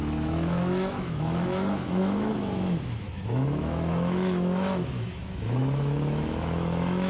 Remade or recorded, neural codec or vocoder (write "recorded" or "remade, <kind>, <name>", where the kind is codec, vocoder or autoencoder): remade, autoencoder, DAC-VAE